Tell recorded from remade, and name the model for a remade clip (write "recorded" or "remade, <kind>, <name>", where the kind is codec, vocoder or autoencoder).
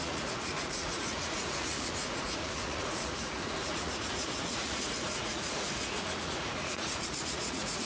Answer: remade, vocoder, Vocos